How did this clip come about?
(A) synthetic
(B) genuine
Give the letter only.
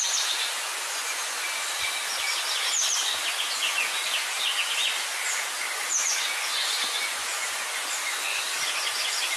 A